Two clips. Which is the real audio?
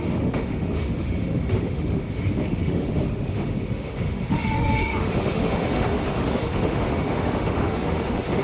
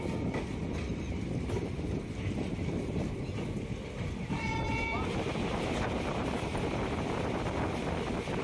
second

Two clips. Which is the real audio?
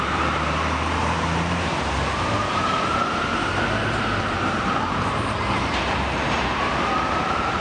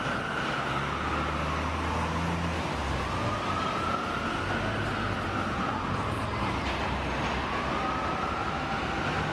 second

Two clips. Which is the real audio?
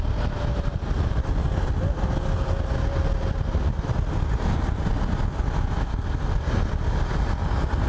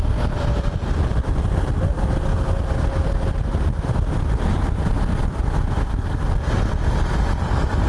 first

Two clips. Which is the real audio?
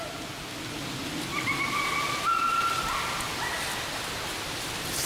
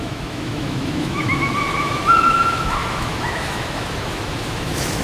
first